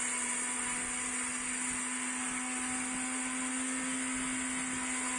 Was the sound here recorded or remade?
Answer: recorded